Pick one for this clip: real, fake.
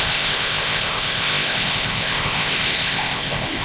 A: fake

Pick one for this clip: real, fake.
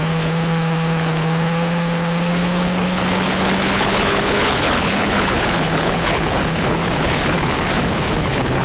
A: fake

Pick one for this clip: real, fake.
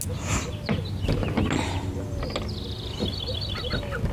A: real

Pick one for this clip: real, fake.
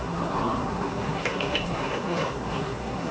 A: fake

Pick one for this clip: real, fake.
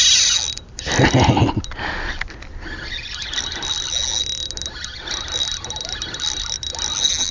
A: real